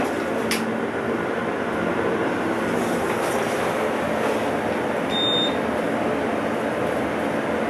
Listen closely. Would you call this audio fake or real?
real